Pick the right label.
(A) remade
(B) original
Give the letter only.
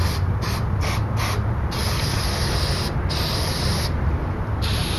B